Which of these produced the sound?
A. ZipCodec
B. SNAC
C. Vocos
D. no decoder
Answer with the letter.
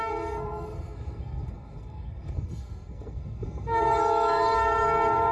B